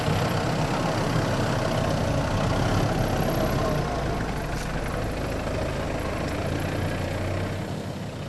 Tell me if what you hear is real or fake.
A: real